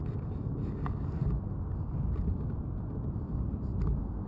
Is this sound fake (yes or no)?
no